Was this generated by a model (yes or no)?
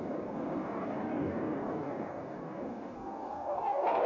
yes